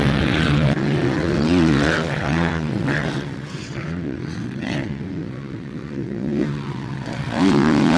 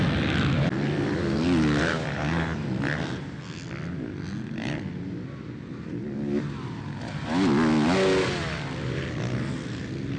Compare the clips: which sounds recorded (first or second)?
second